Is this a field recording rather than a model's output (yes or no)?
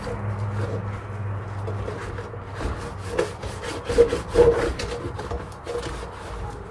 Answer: yes